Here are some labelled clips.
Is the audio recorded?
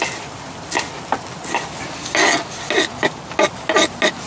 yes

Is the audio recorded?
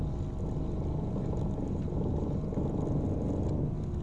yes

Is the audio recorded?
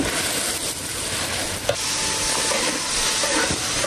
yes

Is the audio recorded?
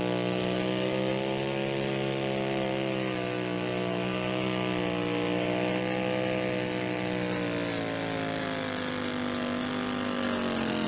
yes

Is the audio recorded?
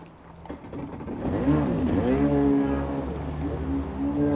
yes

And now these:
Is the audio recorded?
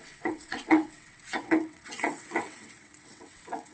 no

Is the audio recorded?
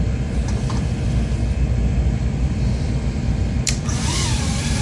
no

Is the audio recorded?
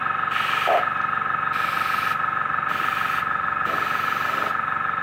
yes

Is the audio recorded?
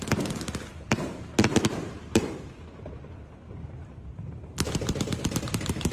no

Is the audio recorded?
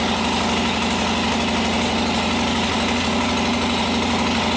yes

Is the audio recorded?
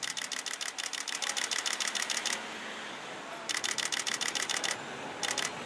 yes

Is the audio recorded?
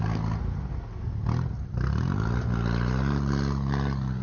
yes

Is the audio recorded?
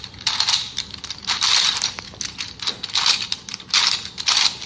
yes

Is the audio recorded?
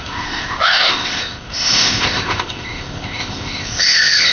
no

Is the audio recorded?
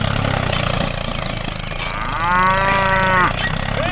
yes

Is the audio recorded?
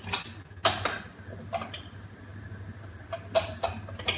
yes